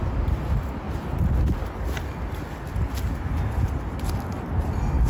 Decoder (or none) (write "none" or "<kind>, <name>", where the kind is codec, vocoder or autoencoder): none